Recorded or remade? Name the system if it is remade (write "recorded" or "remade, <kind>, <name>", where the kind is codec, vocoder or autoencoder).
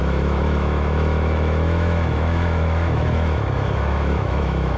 remade, autoencoder, DAC-VAE